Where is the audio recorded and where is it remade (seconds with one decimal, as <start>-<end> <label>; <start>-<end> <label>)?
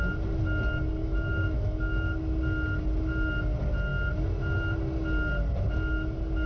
0.0-1.0 recorded; 1.0-2.2 remade; 2.2-6.5 recorded